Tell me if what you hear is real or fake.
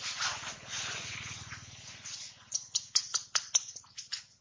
fake